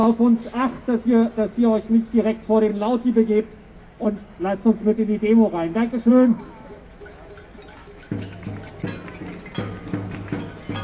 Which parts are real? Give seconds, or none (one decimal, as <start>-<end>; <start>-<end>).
1.0-2.7; 3.8-6.1; 7.3-7.8; 8.7-10.8